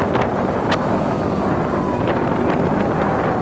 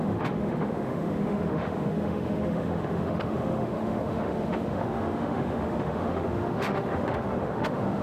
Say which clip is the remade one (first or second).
second